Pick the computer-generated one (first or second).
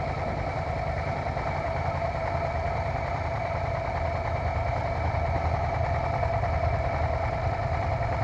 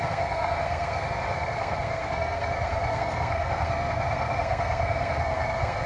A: second